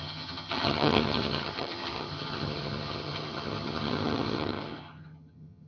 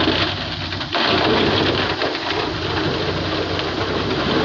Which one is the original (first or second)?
second